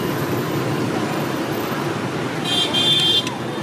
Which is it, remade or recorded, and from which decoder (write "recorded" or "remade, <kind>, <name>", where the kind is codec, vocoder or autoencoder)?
recorded